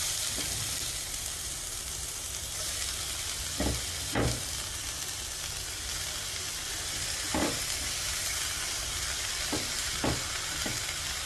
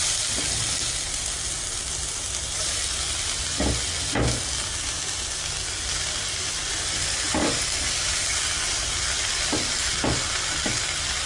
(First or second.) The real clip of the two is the second